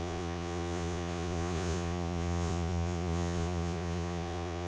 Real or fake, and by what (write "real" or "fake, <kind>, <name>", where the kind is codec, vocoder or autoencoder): fake, vocoder, Vocos